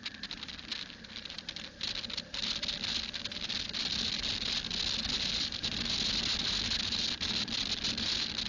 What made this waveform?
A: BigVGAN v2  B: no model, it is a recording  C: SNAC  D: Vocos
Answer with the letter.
B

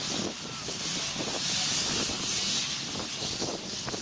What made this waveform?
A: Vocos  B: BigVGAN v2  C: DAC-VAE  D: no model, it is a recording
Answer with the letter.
D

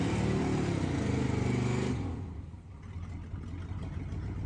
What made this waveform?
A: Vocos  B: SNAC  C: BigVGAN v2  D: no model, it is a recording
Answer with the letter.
D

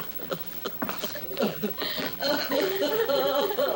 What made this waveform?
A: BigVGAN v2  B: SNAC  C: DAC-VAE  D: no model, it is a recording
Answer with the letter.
A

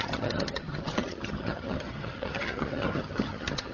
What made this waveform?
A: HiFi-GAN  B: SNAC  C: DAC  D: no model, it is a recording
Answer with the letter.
A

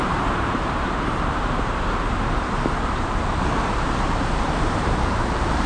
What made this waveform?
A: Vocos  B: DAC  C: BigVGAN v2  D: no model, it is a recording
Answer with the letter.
C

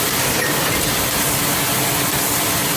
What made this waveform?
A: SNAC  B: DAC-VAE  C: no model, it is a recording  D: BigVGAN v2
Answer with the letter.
C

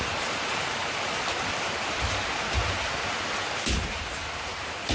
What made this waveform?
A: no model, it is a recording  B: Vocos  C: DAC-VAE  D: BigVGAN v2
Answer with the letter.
A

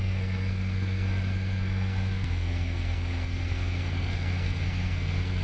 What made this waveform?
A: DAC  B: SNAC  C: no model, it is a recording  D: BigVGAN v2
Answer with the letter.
B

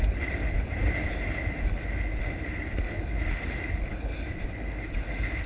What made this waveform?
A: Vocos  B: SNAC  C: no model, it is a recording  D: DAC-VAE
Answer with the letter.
C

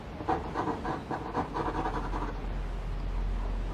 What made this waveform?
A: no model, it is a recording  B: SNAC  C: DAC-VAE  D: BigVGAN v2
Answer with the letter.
A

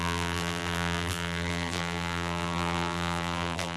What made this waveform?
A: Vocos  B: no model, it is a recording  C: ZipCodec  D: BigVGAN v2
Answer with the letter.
D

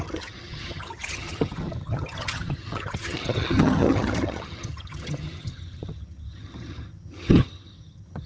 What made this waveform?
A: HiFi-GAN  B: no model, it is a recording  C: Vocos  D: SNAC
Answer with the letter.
A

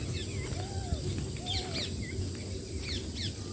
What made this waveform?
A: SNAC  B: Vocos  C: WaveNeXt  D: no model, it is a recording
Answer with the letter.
D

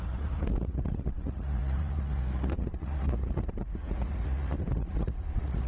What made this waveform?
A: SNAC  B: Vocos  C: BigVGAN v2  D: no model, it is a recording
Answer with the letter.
B